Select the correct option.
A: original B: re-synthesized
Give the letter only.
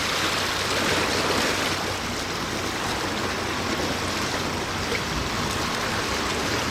A